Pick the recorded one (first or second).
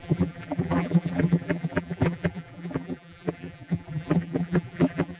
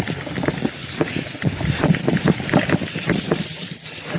second